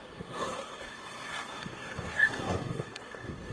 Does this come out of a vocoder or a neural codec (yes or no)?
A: yes